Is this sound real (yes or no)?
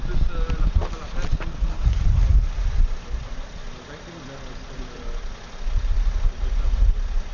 yes